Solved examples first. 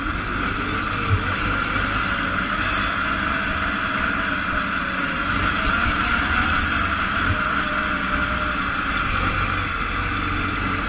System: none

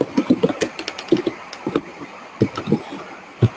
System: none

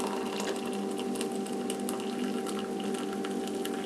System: none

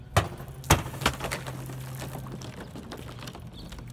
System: none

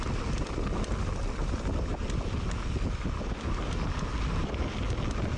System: none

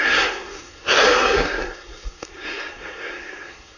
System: codec, SNAC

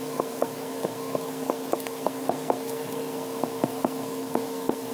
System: codec, SNAC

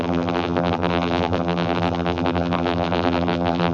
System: vocoder, BigVGAN v2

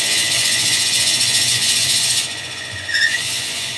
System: vocoder, Vocos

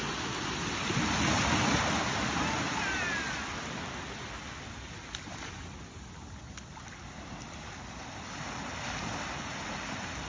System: none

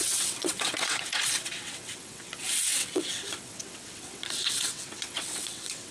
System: vocoder, WaveNeXt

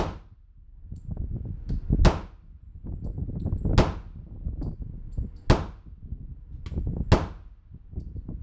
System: none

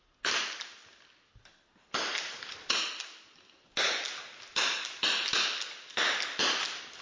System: none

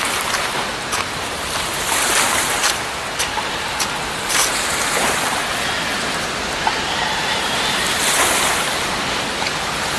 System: vocoder, BigVGAN v2